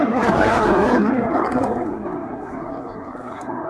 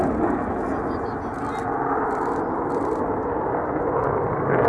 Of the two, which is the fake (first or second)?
first